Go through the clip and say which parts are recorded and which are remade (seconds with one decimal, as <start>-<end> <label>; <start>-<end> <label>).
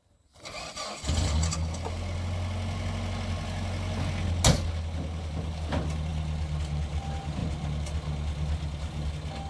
0.0-9.5 recorded